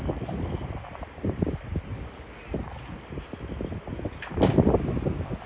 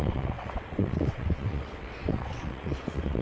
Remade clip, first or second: second